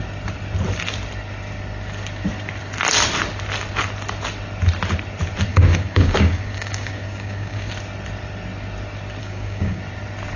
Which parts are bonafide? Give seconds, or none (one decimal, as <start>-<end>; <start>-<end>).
0.0-5.5; 7.7-9.2; 9.8-10.4